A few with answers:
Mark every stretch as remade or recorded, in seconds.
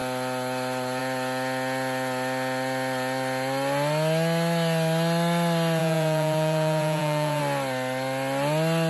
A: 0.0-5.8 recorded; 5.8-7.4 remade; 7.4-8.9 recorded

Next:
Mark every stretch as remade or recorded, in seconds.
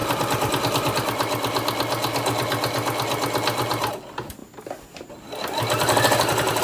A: 0.0-6.6 recorded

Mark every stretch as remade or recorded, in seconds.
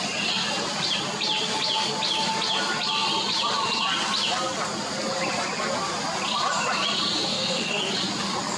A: 0.0-7.3 recorded; 7.3-7.9 remade; 7.9-8.6 recorded